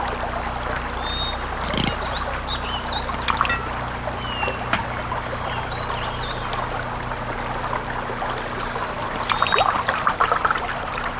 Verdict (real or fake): real